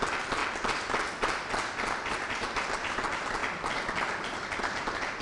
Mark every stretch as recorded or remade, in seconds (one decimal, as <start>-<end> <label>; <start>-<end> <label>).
0.0-0.4 remade; 0.4-2.1 recorded; 2.1-3.4 remade; 3.4-4.6 recorded; 4.6-5.2 remade

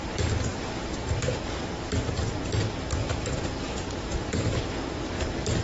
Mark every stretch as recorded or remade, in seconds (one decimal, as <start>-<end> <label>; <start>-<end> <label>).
0.0-0.5 recorded; 0.5-1.1 remade; 1.1-3.0 recorded; 3.0-4.5 remade; 4.5-5.6 recorded